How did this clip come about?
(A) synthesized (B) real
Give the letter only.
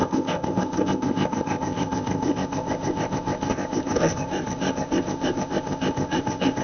A